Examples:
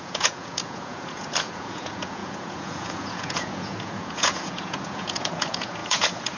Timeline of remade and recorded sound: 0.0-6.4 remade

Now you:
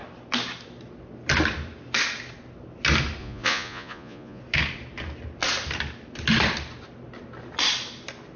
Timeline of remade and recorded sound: 0.0-3.2 recorded; 3.2-4.4 remade; 4.4-8.4 recorded

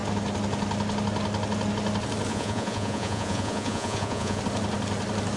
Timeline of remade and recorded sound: 0.0-2.3 recorded; 2.3-4.4 remade; 4.4-5.4 recorded